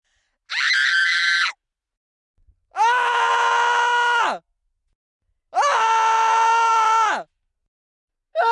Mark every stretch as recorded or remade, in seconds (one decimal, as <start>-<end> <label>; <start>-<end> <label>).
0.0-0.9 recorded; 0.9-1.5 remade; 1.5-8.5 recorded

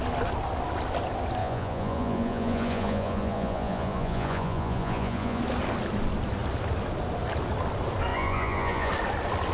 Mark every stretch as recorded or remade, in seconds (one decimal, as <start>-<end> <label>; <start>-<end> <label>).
0.0-1.4 recorded; 1.4-5.4 remade; 5.4-8.1 recorded; 8.1-8.9 remade; 8.9-9.5 recorded

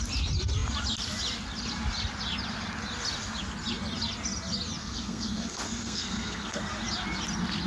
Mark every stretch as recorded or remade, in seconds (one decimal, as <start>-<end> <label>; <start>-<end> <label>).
0.0-4.8 recorded; 4.8-6.6 remade; 6.6-7.7 recorded